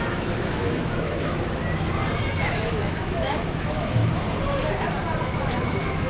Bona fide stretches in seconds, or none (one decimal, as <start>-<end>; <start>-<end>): 1.6-2.4; 4.0-5.3